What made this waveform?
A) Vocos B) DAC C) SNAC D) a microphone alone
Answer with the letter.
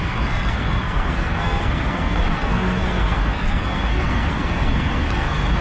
C